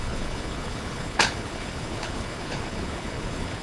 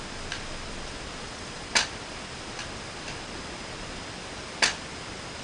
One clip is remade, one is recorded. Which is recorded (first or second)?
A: second